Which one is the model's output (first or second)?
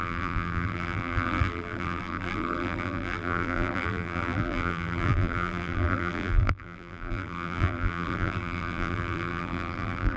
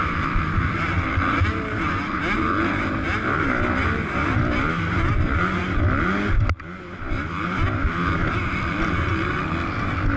first